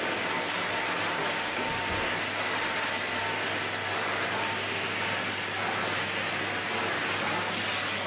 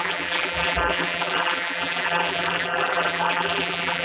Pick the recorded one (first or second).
first